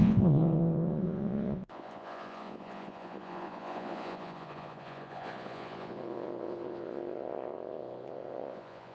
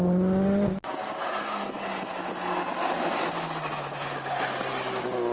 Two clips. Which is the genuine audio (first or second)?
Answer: second